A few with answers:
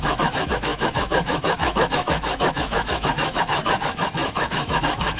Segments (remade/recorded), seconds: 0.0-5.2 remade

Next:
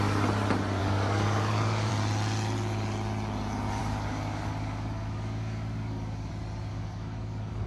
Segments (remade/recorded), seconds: 0.0-0.8 recorded; 0.8-1.9 remade; 1.9-3.8 recorded; 3.8-6.3 remade; 6.3-6.7 recorded; 6.7-7.7 remade